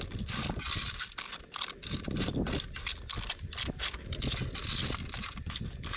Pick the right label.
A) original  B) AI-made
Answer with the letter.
A